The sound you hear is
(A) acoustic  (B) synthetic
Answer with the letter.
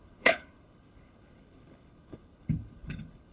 B